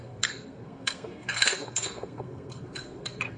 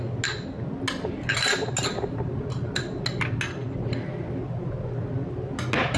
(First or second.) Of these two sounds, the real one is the second